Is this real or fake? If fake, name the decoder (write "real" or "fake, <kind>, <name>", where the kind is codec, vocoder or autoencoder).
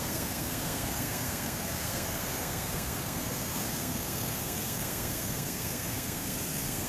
fake, codec, SNAC